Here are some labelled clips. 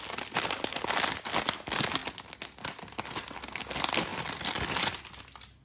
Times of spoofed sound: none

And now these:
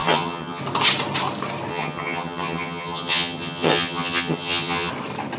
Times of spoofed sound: 0.0-0.6 (vocoder, HiFi-GAN); 1.7-4.9

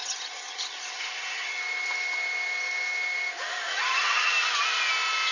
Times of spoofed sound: 0.0-1.6 (vocoder, HiFi-GAN); 3.7-4.3

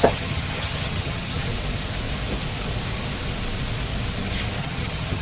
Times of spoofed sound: 0.0-1.5 (vocoder, HiFi-GAN); 4.6-5.2

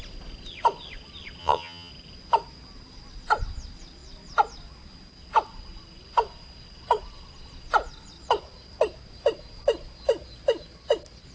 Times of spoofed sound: 1.4-1.9 (vocoder, HiFi-GAN)

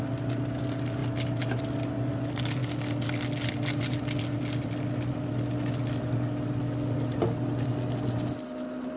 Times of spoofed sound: none